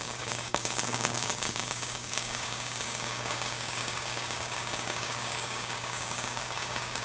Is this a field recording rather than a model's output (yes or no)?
no